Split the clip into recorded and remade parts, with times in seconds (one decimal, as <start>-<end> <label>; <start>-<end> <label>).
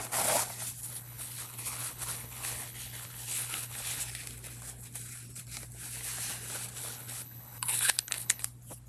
0.0-0.8 recorded; 0.8-4.0 remade; 4.0-6.8 recorded; 6.8-8.4 remade; 8.4-8.9 recorded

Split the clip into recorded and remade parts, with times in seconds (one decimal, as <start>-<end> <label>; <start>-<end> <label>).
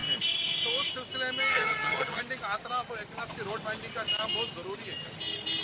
0.0-1.5 recorded; 1.5-2.2 remade; 2.2-5.6 recorded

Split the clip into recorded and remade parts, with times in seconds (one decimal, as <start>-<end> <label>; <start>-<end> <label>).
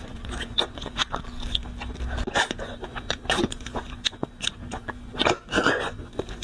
0.0-1.0 remade; 1.0-2.2 recorded; 2.2-6.4 remade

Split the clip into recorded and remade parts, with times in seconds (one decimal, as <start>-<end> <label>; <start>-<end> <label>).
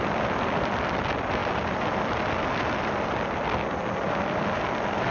0.0-5.1 recorded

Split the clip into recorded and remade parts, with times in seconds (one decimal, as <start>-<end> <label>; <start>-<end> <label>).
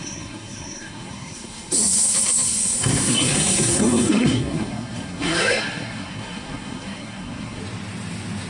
0.0-7.6 remade; 7.6-8.5 recorded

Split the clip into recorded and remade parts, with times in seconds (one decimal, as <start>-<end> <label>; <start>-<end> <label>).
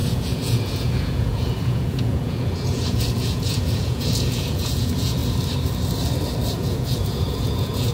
0.0-5.2 remade; 5.2-6.5 recorded; 6.5-7.9 remade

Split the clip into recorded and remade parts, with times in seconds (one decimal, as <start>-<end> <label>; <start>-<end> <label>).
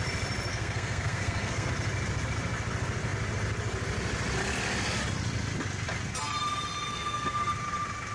0.0-0.5 recorded; 0.5-1.7 remade; 1.7-6.9 recorded; 6.9-7.5 remade; 7.5-8.1 recorded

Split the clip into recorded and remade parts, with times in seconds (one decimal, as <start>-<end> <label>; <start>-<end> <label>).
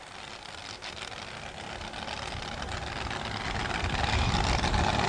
0.0-5.1 recorded